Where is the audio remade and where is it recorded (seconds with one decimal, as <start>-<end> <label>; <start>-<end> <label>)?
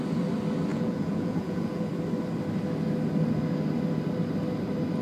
0.0-0.7 recorded; 0.7-1.9 remade; 1.9-5.0 recorded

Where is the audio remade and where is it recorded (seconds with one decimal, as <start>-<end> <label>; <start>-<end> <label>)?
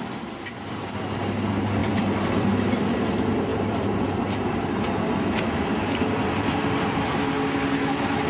0.0-1.8 recorded; 1.8-2.5 remade; 2.5-3.5 recorded; 3.5-4.1 remade; 4.1-8.3 recorded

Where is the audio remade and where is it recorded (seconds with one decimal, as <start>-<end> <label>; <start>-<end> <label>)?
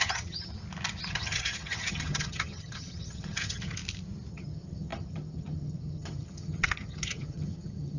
0.0-0.5 remade; 0.5-1.1 recorded; 1.1-3.8 remade; 3.8-4.3 recorded; 4.3-8.0 remade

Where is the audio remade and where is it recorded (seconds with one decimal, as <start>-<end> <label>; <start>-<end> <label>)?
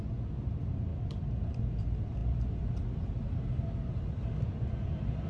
0.0-5.3 recorded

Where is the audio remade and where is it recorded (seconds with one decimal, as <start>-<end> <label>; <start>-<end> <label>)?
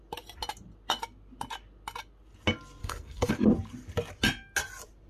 0.0-2.8 recorded; 2.8-3.3 remade; 3.3-5.1 recorded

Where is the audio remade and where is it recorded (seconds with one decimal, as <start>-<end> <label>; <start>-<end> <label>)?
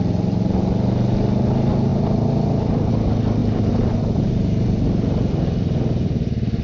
0.0-3.4 recorded; 3.4-4.3 remade; 4.3-6.6 recorded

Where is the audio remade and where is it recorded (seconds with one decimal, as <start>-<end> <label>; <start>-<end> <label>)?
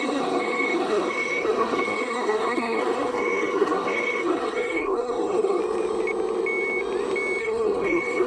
0.0-5.6 remade; 5.6-7.4 recorded; 7.4-8.3 remade